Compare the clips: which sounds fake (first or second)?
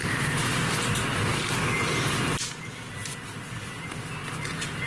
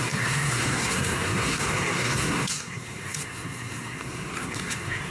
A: second